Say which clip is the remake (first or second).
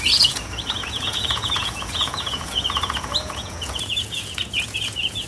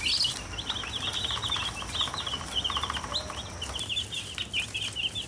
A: first